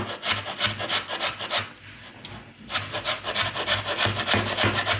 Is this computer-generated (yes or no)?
no